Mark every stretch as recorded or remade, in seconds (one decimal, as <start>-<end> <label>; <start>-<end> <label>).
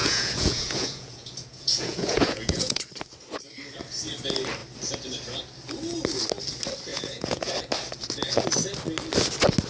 0.0-2.8 remade; 2.8-6.9 recorded; 6.9-7.5 remade; 7.5-9.7 recorded